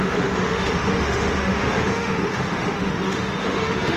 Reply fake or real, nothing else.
fake